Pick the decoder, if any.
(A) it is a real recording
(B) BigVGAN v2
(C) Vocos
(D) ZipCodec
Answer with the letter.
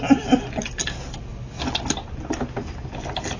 A